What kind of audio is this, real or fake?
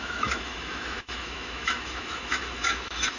fake